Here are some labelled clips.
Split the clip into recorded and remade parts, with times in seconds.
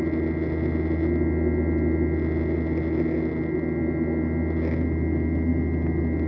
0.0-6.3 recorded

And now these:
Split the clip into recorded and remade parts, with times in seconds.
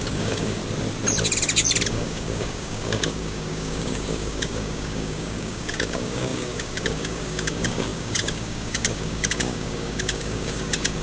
0.0-0.6 remade; 0.6-1.9 recorded; 1.9-11.0 remade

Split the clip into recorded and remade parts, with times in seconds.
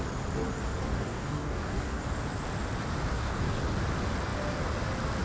0.0-0.8 recorded; 0.8-2.0 remade; 2.0-3.1 recorded; 3.1-3.6 remade; 3.6-5.2 recorded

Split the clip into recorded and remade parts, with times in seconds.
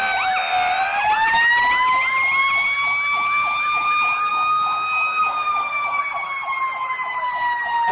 0.0-4.3 recorded; 4.3-6.0 remade; 6.0-7.9 recorded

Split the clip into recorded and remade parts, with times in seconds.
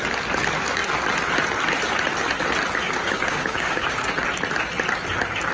0.0-2.8 recorded; 2.8-4.1 remade; 4.1-5.5 recorded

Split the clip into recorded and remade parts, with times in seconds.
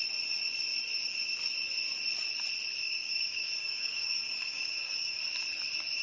0.0-2.8 recorded; 2.8-5.2 remade; 5.2-6.0 recorded